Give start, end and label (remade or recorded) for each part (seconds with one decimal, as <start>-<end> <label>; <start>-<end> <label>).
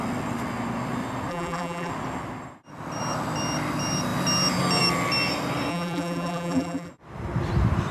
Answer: 0.0-1.3 recorded; 1.3-1.9 remade; 1.9-5.7 recorded; 5.7-6.9 remade; 6.9-7.9 recorded